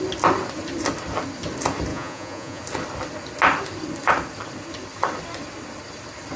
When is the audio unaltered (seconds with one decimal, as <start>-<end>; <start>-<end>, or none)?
0.0-1.9; 2.6-6.4